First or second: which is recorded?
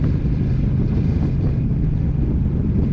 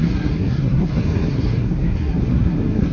first